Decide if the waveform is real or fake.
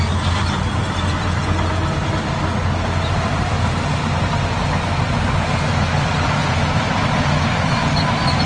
real